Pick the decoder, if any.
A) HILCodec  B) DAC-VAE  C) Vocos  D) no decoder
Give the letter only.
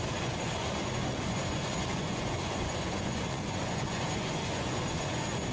C